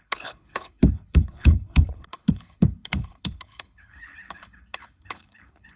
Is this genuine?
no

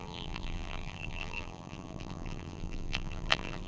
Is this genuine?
no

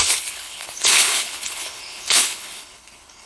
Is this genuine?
no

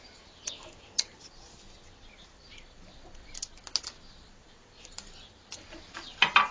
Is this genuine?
yes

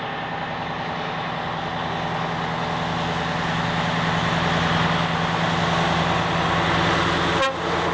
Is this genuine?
yes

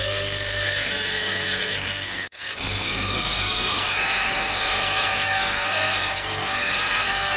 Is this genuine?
no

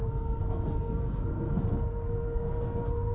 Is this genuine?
no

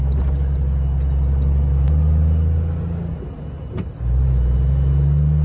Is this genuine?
yes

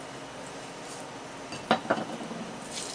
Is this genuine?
yes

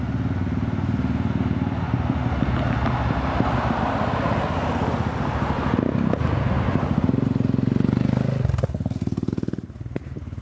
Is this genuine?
yes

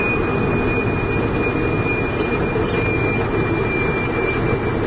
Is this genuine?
yes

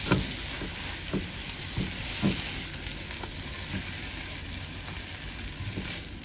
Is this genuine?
yes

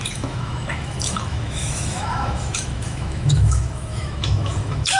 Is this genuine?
no